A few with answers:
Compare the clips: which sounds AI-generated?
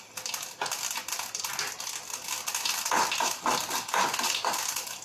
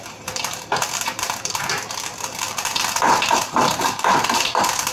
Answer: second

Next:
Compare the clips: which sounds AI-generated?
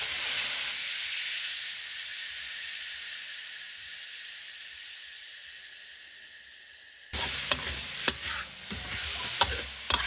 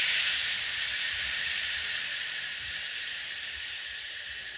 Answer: second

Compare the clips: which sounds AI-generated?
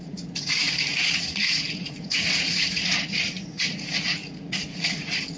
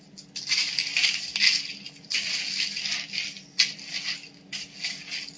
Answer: first